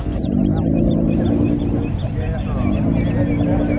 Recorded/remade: recorded